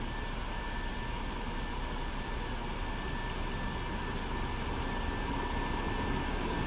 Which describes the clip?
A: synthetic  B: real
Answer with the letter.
B